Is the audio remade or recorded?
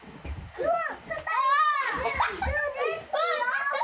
recorded